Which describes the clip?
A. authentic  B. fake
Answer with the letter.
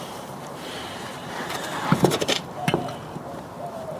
B